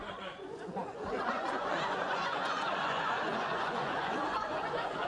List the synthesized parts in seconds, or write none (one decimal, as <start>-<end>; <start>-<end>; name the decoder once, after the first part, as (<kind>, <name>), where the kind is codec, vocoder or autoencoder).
0.0-5.1 (vocoder, Vocos)